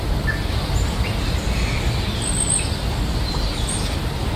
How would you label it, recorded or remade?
recorded